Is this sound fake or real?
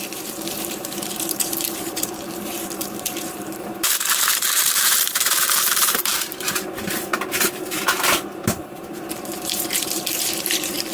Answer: fake